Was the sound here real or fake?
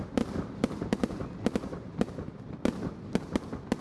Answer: real